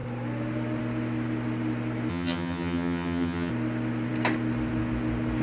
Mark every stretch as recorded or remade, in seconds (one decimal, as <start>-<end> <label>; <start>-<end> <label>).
0.0-2.1 recorded; 2.1-3.5 remade; 3.5-5.4 recorded